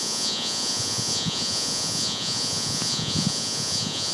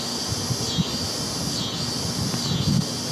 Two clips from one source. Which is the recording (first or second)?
second